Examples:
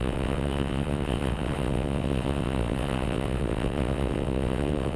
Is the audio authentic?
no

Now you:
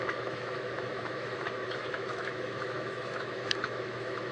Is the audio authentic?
no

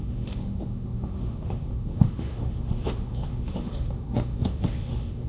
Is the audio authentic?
no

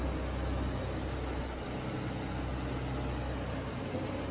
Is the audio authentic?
yes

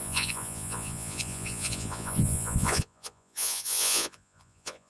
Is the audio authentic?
no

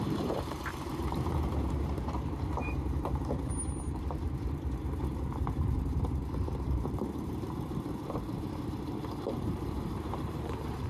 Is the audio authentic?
no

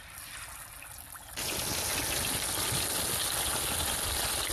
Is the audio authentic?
yes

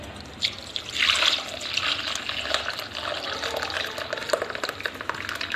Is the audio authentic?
yes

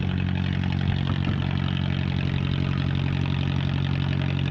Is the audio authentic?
yes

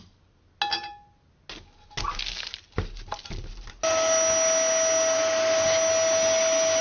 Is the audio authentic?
yes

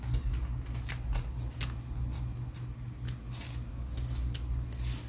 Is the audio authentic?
yes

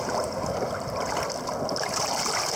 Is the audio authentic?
yes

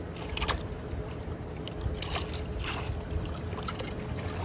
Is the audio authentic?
yes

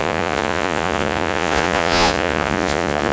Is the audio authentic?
no